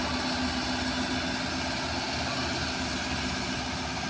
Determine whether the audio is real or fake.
real